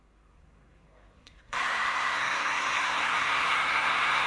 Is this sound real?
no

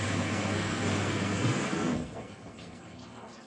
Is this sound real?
no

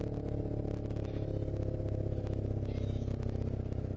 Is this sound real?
yes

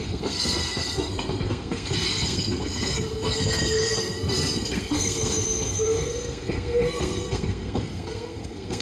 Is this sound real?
no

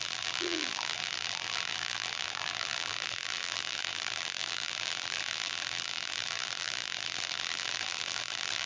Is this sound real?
no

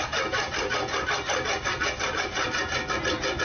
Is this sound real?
yes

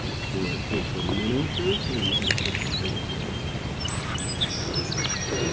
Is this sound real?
yes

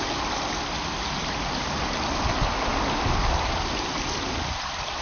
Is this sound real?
yes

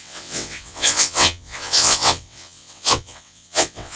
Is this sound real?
no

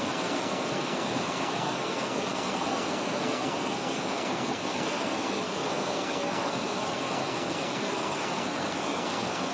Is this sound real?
no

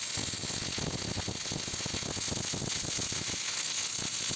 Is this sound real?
yes